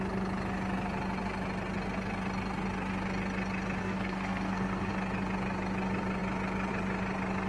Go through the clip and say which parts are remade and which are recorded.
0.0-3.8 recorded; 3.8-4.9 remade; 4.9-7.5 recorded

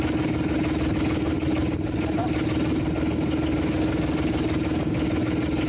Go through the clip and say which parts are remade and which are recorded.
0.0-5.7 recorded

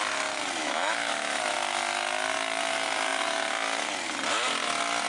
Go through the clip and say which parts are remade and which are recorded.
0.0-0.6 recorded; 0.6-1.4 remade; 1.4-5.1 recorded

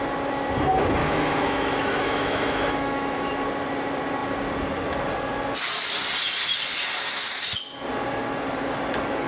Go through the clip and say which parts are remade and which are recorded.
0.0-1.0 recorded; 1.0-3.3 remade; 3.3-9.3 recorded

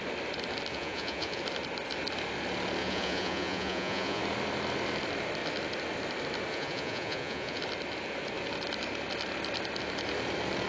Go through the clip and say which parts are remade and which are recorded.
0.0-0.7 recorded; 0.7-1.4 remade; 1.4-2.8 recorded; 2.8-4.2 remade; 4.2-6.5 recorded; 6.5-7.6 remade; 7.6-10.7 recorded

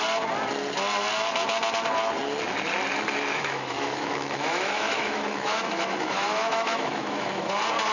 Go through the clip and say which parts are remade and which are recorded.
0.0-3.3 recorded; 3.3-7.5 remade; 7.5-7.9 recorded